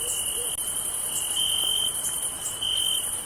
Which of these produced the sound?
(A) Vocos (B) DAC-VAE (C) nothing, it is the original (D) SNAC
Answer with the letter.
C